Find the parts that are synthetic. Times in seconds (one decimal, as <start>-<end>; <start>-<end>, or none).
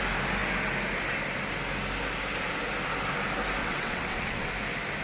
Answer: 3.6-4.5